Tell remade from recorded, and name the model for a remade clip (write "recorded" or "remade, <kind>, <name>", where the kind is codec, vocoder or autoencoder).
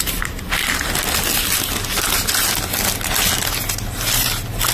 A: recorded